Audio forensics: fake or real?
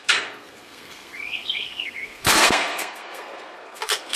fake